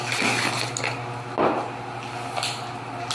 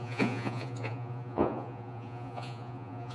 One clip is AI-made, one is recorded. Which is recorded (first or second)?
first